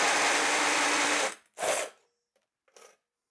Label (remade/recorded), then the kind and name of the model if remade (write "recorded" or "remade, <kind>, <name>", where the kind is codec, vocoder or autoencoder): recorded